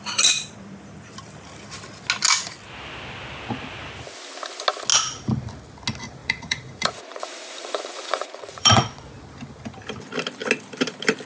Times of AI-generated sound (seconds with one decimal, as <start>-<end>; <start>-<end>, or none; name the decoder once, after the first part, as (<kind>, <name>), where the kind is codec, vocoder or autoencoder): 6.2-9.1 (vocoder, Vocos)